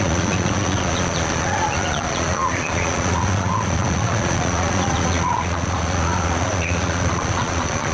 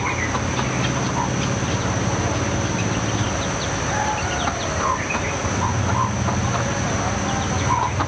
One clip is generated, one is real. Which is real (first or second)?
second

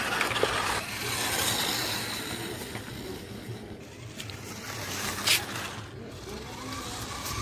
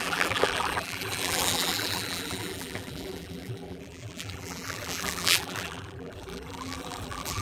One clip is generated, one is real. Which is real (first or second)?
first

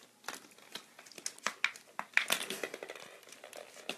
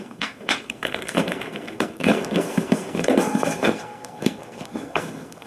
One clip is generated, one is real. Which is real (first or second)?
first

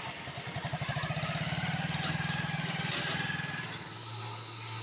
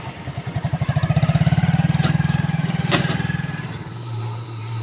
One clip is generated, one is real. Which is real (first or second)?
first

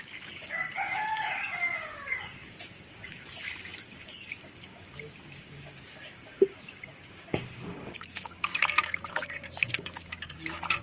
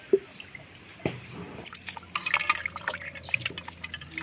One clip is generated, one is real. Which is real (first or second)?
second